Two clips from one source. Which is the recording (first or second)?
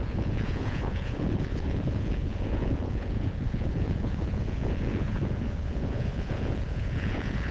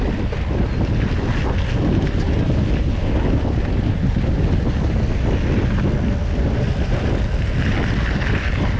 second